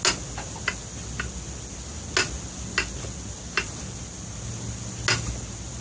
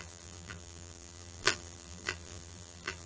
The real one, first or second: first